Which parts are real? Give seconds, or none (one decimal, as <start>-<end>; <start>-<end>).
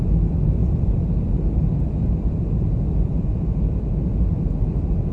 0.0-0.6; 2.1-3.1; 3.7-5.1